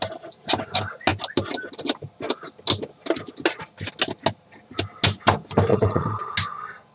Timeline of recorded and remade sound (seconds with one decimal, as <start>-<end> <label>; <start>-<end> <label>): 0.0-5.7 recorded; 5.7-6.3 remade; 6.3-6.9 recorded